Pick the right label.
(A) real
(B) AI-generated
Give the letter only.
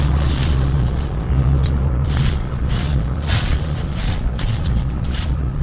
B